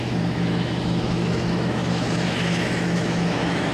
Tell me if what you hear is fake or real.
fake